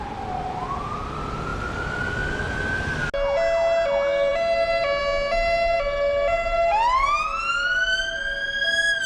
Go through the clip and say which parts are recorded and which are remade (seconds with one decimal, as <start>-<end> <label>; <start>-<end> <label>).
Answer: 0.0-9.1 recorded